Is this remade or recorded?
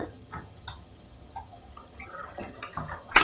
remade